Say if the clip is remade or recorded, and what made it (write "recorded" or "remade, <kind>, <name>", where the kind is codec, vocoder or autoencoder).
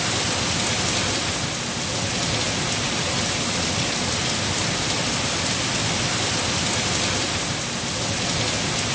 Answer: recorded